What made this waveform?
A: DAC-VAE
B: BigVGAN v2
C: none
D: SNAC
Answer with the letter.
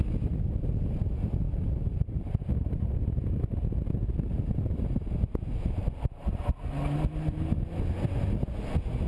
C